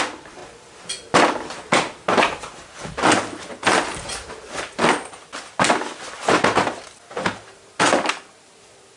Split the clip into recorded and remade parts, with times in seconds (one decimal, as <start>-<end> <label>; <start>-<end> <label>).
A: 0.0-3.9 recorded; 3.9-5.2 remade; 5.2-9.0 recorded